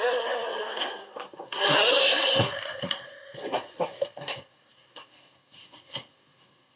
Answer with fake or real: fake